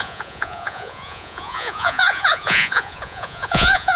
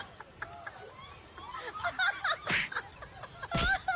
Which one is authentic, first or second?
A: second